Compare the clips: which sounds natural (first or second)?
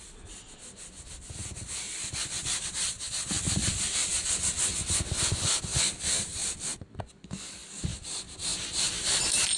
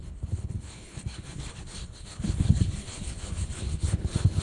first